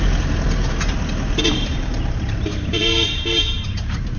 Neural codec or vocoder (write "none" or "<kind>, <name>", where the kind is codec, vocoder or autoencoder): vocoder, BigVGAN v2